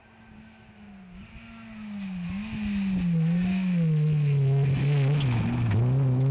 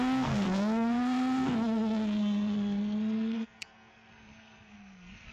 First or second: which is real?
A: first